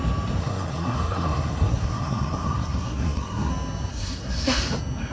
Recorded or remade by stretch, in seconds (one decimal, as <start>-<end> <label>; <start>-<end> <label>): 0.0-0.4 recorded; 0.4-3.5 remade; 3.5-3.9 recorded; 3.9-4.6 remade; 4.6-5.1 recorded